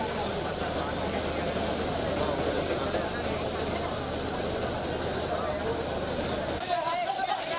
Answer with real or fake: real